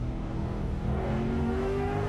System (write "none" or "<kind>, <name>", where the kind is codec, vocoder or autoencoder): codec, DAC